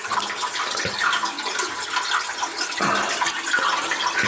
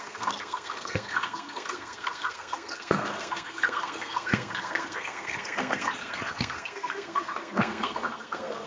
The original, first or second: first